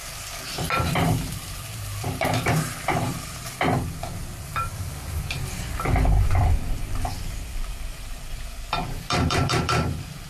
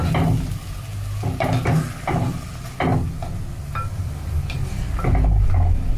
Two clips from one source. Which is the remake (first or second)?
first